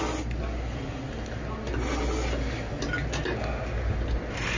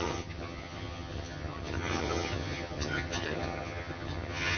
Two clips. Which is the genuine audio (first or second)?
first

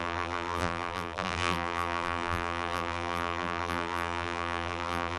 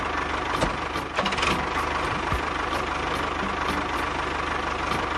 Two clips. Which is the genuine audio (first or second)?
second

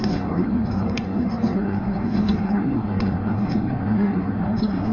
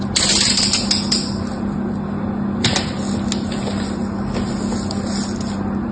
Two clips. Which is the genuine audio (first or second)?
second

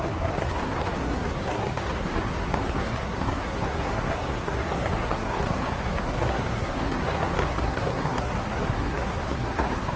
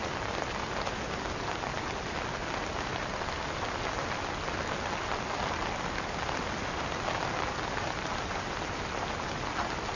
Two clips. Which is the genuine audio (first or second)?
second